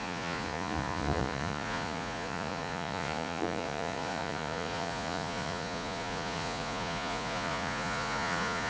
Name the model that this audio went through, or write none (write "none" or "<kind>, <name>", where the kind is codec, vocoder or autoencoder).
vocoder, Vocos